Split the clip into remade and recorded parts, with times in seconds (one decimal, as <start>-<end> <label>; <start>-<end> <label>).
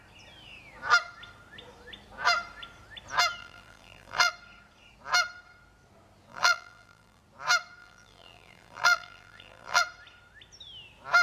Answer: 0.0-3.4 recorded; 3.4-4.3 remade; 4.3-6.3 recorded; 6.3-7.2 remade; 7.2-7.8 recorded; 7.8-9.8 remade; 9.8-11.2 recorded